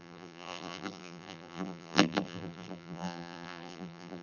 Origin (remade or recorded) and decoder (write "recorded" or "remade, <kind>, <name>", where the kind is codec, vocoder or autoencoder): remade, vocoder, BigVGAN v2